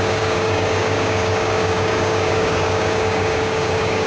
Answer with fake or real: fake